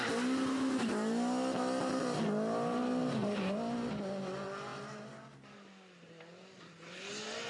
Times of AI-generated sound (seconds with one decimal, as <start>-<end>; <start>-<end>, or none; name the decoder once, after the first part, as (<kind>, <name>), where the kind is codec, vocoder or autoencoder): none